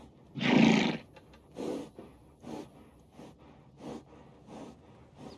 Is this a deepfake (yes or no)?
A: no